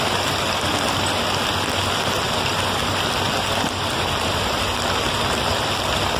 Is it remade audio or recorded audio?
remade